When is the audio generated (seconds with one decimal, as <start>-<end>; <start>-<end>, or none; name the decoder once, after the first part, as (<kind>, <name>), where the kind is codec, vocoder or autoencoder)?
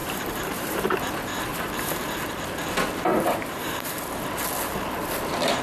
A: 0.0-1.0 (vocoder, BigVGAN v2); 1.5-2.1; 3.1-4.1